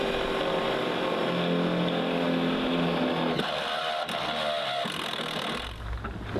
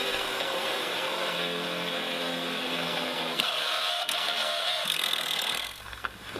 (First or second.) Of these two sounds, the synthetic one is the second